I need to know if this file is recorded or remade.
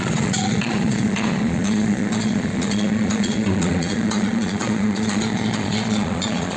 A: remade